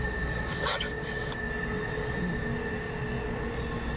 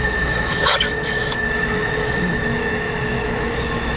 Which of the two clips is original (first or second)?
first